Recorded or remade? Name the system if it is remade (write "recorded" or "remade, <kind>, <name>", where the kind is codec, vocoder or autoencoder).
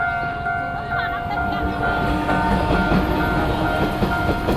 recorded